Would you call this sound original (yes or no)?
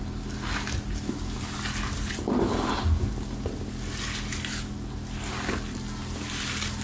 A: yes